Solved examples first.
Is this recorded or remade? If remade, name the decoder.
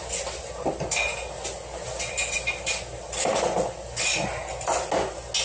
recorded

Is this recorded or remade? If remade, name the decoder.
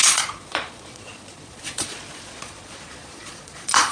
remade, vocoder, Vocos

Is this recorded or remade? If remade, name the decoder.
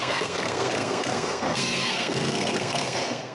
remade, codec, SNAC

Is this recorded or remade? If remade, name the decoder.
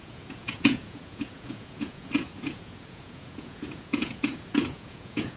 remade, vocoder, Vocos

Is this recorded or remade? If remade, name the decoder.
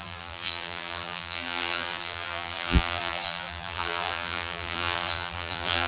remade, vocoder, BigVGAN v2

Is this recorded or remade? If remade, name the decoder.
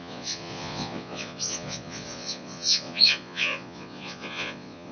remade, vocoder, Vocos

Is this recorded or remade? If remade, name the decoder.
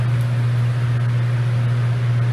recorded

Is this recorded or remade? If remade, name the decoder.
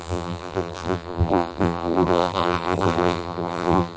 remade, vocoder, BigVGAN v2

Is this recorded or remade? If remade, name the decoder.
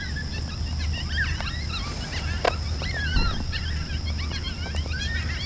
recorded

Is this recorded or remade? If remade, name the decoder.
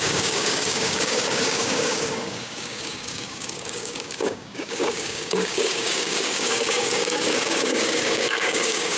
remade, codec, DAC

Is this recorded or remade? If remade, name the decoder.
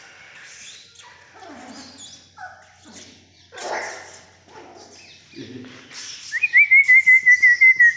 recorded